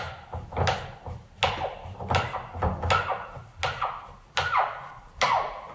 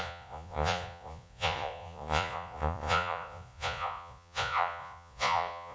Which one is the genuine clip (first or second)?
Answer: first